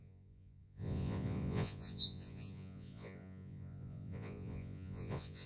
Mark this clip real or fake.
fake